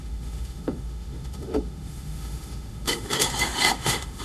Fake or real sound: fake